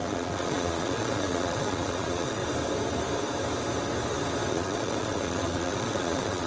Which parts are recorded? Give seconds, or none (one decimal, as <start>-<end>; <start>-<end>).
2.4-4.5